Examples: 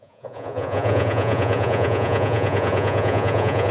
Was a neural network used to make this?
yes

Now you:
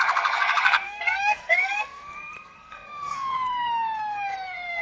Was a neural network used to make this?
yes